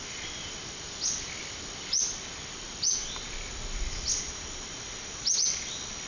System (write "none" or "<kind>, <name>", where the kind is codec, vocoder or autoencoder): none